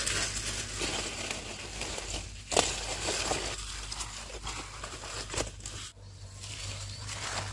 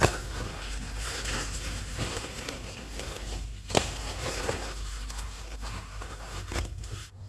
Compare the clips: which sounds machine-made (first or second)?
second